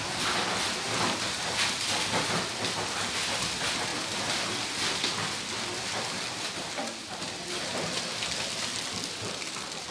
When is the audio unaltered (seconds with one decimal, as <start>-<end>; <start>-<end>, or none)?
0.0-9.9